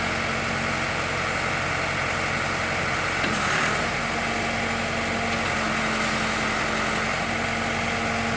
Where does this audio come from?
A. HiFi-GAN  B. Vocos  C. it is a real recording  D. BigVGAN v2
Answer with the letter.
C